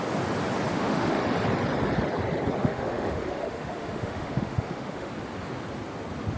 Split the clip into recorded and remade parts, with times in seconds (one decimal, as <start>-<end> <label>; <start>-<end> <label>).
0.0-0.7 recorded; 0.7-1.2 remade; 1.2-2.6 recorded; 2.6-5.1 remade; 5.1-6.4 recorded